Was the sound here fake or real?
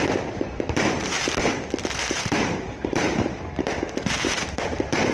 fake